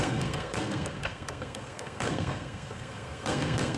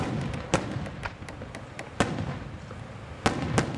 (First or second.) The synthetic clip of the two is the first